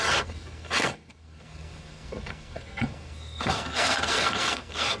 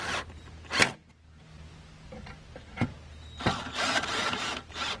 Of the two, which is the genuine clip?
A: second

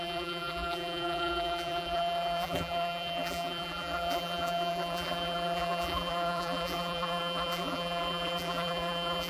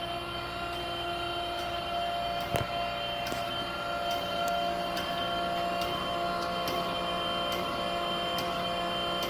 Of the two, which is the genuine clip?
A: second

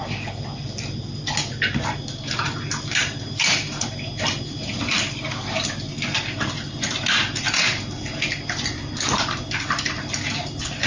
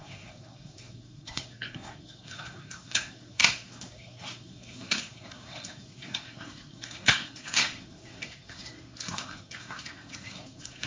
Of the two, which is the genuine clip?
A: first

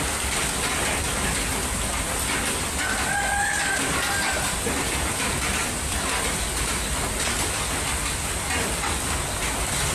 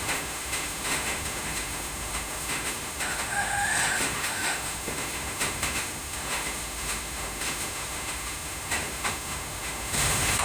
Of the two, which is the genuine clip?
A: first